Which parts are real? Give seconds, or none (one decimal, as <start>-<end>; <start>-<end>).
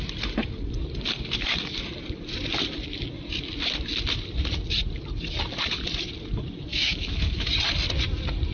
0.0-6.7; 7.5-8.5